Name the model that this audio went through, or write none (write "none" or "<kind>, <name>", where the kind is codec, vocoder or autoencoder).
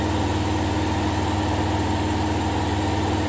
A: none